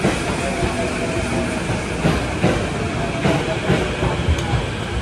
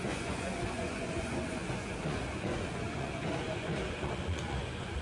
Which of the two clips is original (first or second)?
first